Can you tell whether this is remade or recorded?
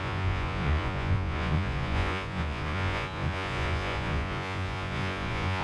remade